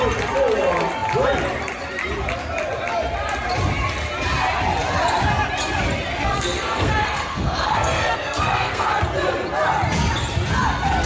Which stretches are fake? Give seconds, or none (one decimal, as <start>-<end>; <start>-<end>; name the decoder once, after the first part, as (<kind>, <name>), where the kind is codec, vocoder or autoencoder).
6.1-9.0 (codec, SNAC)